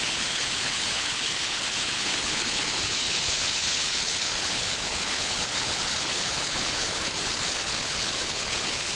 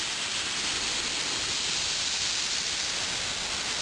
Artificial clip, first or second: first